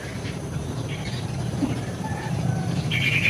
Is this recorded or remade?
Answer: remade